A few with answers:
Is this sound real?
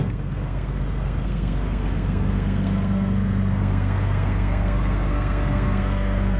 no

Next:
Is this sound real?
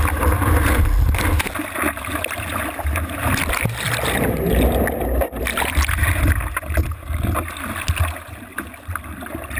yes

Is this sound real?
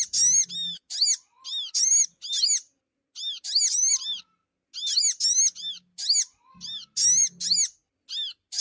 yes